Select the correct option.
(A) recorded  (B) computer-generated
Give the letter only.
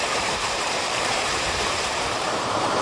B